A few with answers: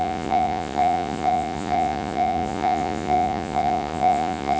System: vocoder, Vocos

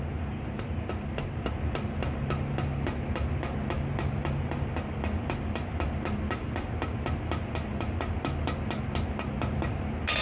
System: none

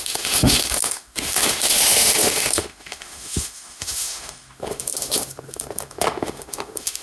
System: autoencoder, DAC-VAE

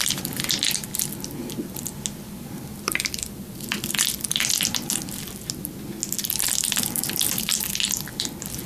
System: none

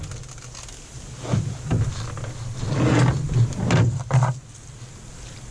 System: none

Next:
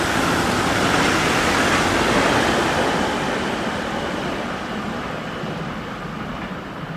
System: none